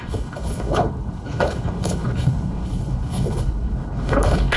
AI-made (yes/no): yes